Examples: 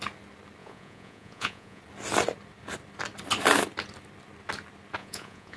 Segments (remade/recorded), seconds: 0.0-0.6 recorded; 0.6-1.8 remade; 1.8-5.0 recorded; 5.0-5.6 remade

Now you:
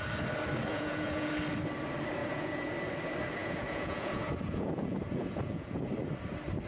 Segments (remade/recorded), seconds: 0.0-0.7 recorded; 0.7-1.3 remade; 1.3-2.2 recorded; 2.2-2.7 remade; 2.7-3.4 recorded; 3.4-5.9 remade; 5.9-6.7 recorded

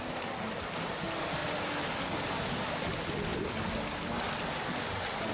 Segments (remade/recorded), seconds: 0.0-5.3 recorded

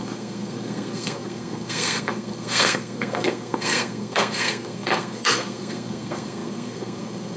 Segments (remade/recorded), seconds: 0.0-7.4 remade

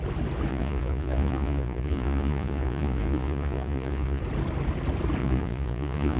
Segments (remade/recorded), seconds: 0.0-0.5 recorded; 0.5-4.2 remade; 4.2-5.2 recorded; 5.2-6.2 remade

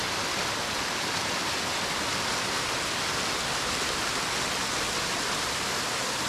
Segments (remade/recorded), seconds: 0.0-6.3 recorded

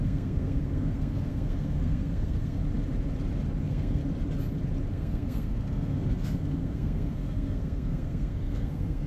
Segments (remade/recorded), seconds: 0.0-2.6 remade; 2.6-3.6 recorded; 3.6-4.0 remade; 4.0-4.9 recorded; 4.9-9.1 remade